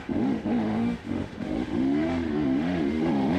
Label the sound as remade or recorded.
remade